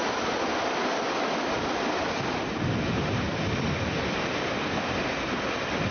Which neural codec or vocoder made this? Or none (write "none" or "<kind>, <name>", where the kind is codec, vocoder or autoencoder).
none